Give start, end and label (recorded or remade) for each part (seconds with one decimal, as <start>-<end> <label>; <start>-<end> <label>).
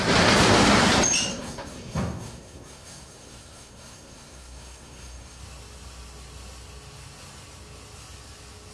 0.0-1.3 recorded; 1.3-5.4 remade; 5.4-8.7 recorded